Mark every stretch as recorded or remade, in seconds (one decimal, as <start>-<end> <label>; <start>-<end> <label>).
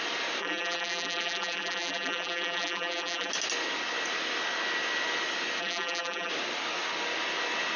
0.0-0.4 recorded; 0.4-3.3 remade; 3.3-5.6 recorded; 5.6-6.3 remade; 6.3-7.8 recorded